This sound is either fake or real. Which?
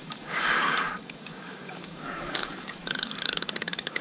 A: fake